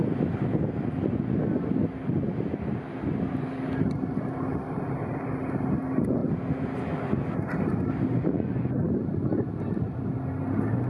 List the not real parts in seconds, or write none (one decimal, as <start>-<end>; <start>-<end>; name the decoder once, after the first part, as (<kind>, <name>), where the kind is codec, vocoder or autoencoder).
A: none